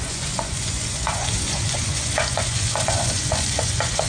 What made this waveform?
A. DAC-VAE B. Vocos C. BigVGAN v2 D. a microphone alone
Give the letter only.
B